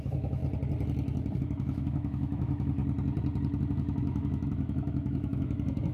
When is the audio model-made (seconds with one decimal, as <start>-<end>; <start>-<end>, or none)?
0.0-0.4; 1.4-2.8; 3.7-5.9